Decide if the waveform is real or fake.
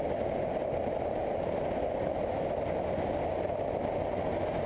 real